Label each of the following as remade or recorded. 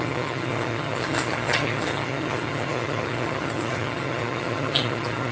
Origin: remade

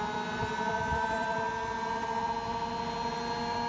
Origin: recorded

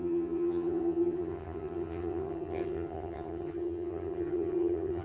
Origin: remade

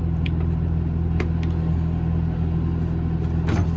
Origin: recorded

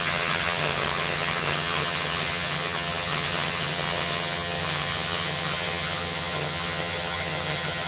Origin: remade